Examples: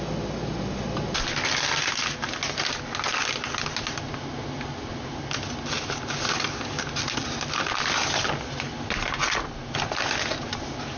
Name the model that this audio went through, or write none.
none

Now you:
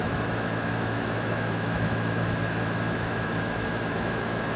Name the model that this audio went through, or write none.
autoencoder, DAC-VAE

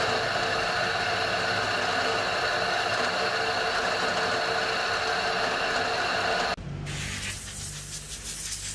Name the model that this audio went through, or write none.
none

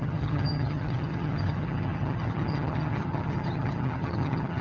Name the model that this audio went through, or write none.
vocoder, HiFi-GAN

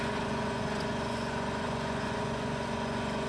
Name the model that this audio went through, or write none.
vocoder, Vocos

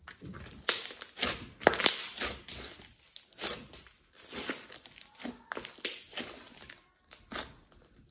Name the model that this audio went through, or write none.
none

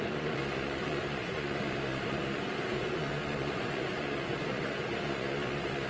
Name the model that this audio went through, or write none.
vocoder, Vocos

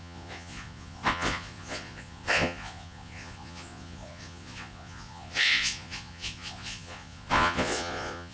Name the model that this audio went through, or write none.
vocoder, Vocos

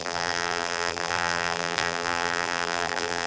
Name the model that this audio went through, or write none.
vocoder, BigVGAN v2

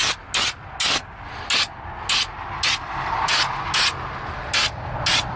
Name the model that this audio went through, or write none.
none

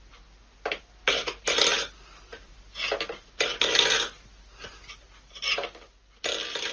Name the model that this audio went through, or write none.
none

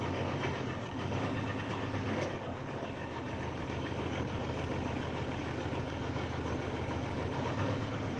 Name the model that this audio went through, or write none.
codec, DAC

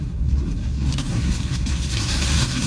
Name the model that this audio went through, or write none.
codec, SNAC